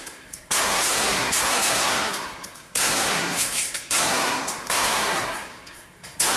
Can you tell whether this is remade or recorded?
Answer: remade